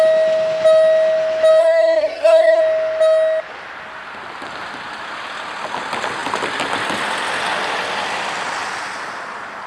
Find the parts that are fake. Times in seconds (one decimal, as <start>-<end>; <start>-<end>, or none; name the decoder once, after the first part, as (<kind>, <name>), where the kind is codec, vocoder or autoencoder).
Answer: 1.6-2.6 (codec, SNAC)